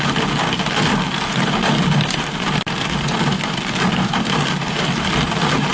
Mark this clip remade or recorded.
recorded